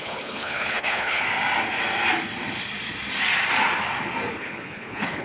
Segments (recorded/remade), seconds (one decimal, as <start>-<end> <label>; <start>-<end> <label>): 0.0-1.2 remade; 1.2-4.3 recorded; 4.3-5.2 remade